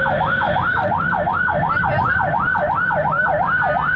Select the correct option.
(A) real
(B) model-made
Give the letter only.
A